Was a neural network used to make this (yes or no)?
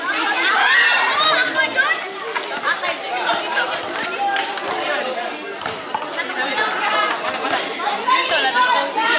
no